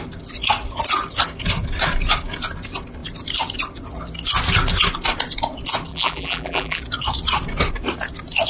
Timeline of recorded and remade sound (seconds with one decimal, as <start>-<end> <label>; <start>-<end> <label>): 0.0-5.9 recorded; 5.9-6.8 remade; 6.8-8.5 recorded